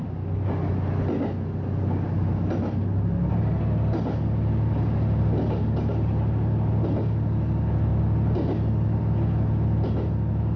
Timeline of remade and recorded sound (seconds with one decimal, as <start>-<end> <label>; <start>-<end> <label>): 0.0-10.6 recorded